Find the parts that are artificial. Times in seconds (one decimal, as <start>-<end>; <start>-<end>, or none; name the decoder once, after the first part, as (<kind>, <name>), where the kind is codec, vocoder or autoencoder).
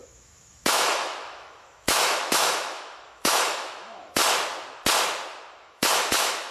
0.0-4.2 (autoencoder, DAC-VAE); 5.6-6.5